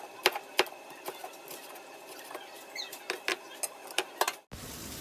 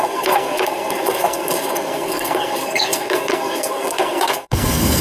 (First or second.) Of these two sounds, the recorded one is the first